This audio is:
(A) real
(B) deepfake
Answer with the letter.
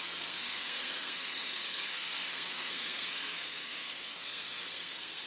B